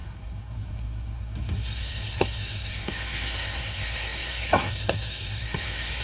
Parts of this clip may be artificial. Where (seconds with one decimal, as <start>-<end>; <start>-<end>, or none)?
0.0-6.0